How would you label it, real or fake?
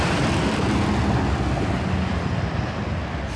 real